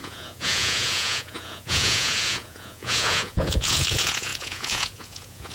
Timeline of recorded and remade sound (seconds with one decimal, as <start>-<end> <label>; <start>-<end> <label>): 0.0-5.5 remade